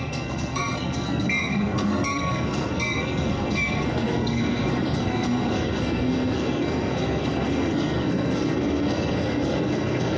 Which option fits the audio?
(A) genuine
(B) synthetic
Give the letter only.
B